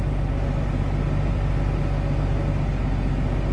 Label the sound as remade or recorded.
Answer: recorded